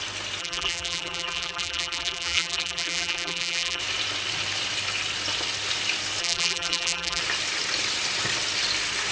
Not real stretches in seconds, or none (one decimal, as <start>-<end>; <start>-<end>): 0.4-3.8; 6.2-7.2